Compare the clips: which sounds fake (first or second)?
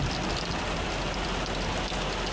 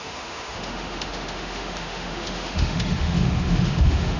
second